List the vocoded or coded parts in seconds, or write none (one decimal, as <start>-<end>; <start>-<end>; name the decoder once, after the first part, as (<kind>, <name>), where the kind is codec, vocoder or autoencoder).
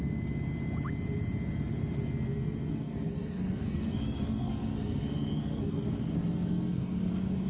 2.7-7.1 (codec, SNAC)